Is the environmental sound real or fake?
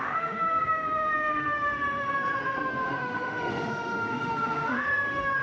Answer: fake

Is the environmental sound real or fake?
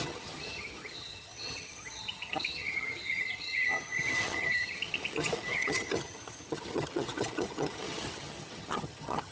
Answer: fake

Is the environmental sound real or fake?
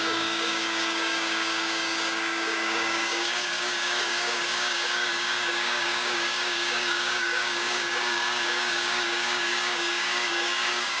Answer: fake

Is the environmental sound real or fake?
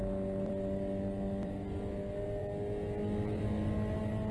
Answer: real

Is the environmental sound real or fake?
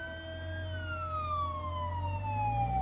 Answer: real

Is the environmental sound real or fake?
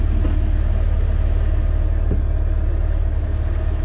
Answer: real